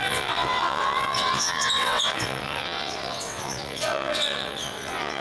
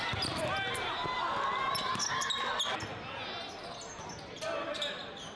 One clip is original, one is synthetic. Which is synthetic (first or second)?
first